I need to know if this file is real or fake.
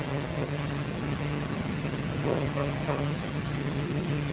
fake